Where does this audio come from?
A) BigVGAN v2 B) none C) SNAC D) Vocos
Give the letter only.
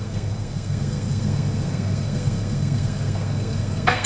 C